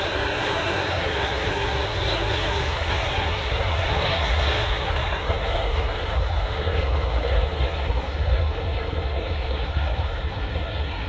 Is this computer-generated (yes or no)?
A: yes